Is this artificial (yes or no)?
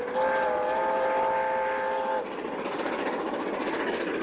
no